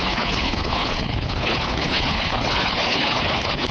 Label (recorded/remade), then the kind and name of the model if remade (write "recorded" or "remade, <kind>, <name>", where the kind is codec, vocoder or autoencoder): remade, codec, HILCodec